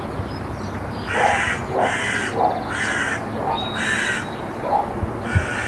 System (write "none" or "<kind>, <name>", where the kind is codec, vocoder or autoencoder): none